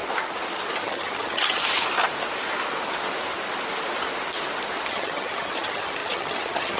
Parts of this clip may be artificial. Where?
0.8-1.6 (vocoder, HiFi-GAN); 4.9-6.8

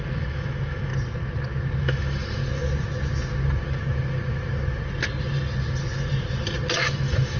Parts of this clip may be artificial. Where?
0.0-0.9 (autoencoder, DAC-VAE); 1.8-2.4; 6.8-7.4